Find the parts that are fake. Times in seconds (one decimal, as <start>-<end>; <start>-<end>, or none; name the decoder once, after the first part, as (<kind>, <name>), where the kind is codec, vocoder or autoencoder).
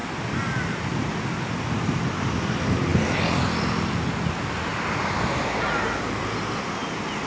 none